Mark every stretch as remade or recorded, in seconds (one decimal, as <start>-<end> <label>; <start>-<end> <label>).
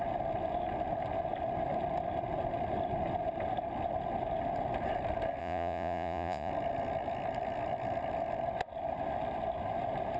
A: 0.0-5.4 recorded; 5.4-6.5 remade; 6.5-10.2 recorded